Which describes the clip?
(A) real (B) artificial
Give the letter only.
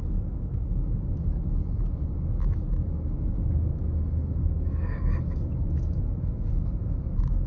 B